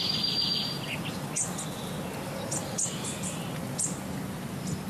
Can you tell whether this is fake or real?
real